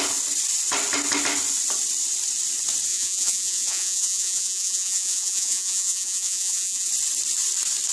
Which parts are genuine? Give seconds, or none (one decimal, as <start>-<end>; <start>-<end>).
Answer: 0.0-2.9; 6.9-7.9